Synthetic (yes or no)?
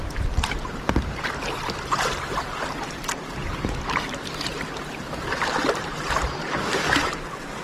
yes